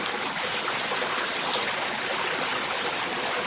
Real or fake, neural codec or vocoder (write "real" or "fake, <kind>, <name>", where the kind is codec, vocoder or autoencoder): real